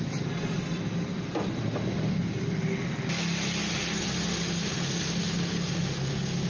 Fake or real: real